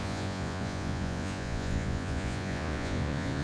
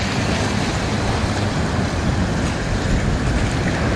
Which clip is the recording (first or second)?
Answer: second